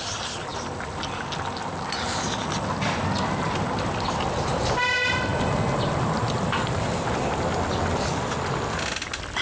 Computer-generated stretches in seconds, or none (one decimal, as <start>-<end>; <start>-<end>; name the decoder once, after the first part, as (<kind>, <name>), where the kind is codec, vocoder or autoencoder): none

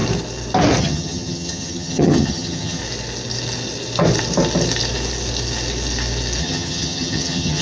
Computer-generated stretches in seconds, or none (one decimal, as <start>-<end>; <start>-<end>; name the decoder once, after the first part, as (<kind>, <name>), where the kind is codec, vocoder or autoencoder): 0.8-2.8 (vocoder, HiFi-GAN); 6.4-7.6

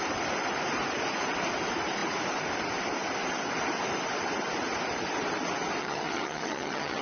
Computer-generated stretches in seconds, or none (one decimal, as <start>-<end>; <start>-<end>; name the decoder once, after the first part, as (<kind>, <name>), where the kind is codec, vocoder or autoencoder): 5.8-7.0 (vocoder, HiFi-GAN)

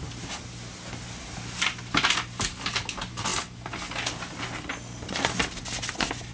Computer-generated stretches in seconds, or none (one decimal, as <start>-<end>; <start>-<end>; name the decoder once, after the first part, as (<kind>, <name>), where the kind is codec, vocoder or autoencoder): none

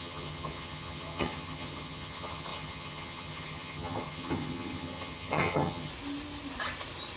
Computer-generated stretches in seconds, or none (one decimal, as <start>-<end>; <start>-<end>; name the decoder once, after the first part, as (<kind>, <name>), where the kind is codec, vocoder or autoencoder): 0.0-5.9 (vocoder, HiFi-GAN)

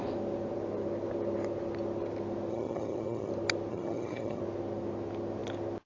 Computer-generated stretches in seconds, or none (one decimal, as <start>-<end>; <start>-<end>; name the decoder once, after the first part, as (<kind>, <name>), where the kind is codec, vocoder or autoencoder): 2.5-3.3 (vocoder, HiFi-GAN); 3.7-4.4

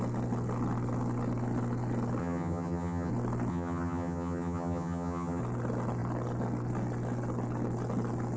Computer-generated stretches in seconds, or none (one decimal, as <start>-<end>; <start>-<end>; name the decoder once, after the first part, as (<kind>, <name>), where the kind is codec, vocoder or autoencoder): 2.2-3.1 (vocoder, HiFi-GAN); 3.5-5.4

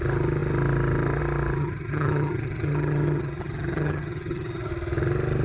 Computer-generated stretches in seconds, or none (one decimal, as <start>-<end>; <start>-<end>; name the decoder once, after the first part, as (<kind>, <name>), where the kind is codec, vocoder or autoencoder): 1.6-4.7 (vocoder, HiFi-GAN)